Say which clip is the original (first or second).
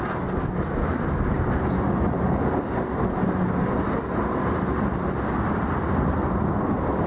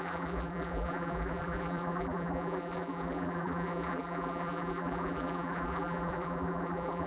first